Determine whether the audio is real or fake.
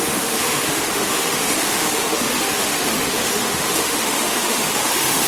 fake